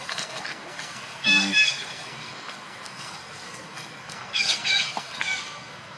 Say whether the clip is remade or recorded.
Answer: remade